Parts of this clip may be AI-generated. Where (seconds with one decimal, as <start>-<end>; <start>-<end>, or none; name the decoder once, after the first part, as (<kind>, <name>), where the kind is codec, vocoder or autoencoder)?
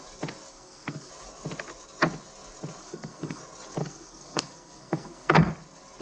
0.5-1.1 (codec, SNAC); 2.8-3.4; 3.8-5.5